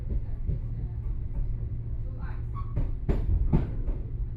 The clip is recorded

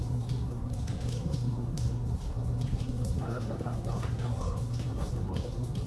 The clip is remade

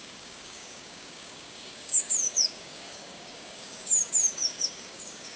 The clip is remade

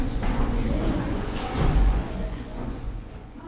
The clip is remade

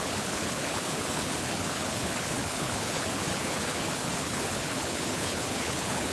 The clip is remade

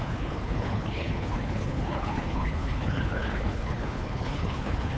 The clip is remade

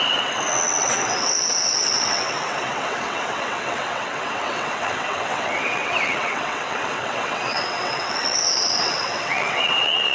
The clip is remade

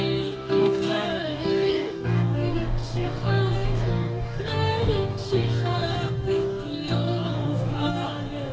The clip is remade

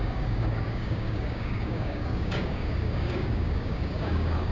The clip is remade